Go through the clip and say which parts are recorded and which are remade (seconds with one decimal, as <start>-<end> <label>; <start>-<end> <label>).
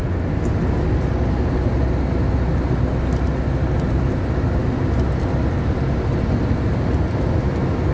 0.0-7.9 recorded